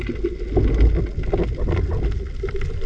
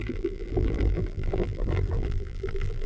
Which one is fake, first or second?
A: second